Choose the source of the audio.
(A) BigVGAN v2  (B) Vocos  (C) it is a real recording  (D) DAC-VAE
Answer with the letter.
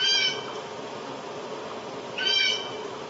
C